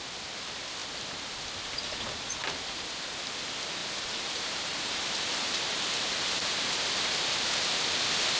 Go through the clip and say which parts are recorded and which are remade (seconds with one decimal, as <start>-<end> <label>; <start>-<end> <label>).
0.0-2.4 recorded; 2.4-3.0 remade; 3.0-3.8 recorded; 3.8-6.8 remade; 6.8-8.4 recorded

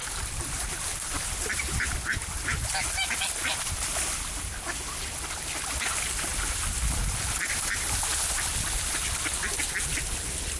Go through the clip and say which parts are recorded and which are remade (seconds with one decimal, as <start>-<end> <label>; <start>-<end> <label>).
0.0-1.9 remade; 1.9-3.4 recorded; 3.4-4.8 remade; 4.8-10.6 recorded

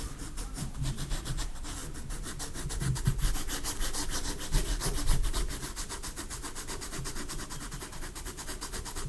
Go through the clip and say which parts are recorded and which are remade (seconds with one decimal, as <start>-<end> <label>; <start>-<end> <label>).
0.0-1.8 remade; 1.8-2.7 recorded; 2.7-3.2 remade; 3.2-8.0 recorded; 8.0-9.1 remade

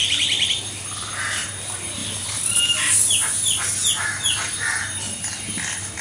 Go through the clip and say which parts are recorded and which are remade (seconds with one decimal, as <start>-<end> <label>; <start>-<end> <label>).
0.0-0.5 remade; 0.5-2.0 recorded; 2.0-2.7 remade; 2.7-6.0 recorded